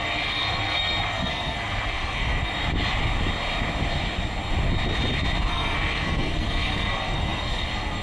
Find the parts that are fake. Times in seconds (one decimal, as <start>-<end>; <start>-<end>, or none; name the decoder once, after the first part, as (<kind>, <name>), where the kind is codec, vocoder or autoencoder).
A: 0.0-2.5 (codec, SNAC); 5.5-8.0